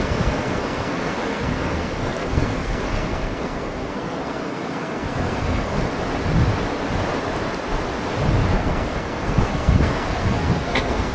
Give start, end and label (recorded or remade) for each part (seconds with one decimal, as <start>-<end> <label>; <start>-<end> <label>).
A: 0.0-5.9 remade; 5.9-8.5 recorded; 8.5-11.1 remade